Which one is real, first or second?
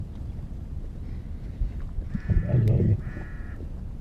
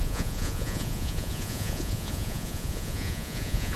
first